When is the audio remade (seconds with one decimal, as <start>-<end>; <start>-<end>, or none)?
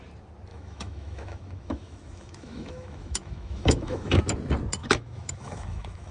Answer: 0.5-4.2; 4.8-6.1